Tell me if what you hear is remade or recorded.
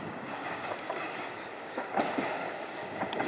remade